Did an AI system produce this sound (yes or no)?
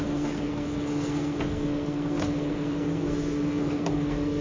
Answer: yes